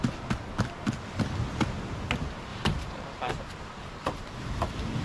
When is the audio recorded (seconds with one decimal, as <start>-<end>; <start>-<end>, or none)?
0.0-2.5; 3.3-5.0